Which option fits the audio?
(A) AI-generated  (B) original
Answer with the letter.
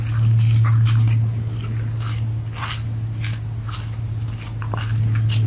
B